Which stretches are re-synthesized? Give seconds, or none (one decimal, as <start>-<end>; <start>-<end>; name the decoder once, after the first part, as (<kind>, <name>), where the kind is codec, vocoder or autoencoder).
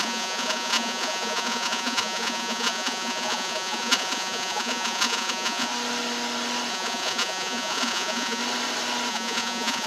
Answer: 0.0-5.7 (vocoder, Vocos); 6.7-8.4; 9.1-9.9